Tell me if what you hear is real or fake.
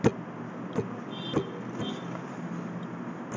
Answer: real